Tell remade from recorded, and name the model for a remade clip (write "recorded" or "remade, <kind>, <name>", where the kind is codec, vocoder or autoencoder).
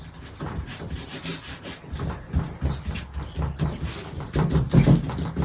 recorded